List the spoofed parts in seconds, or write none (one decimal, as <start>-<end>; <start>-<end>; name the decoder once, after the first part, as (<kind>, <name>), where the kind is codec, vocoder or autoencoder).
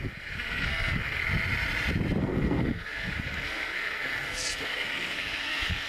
0.0-1.2 (codec, SNAC); 2.2-5.9